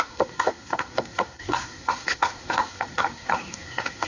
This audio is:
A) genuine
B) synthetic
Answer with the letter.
B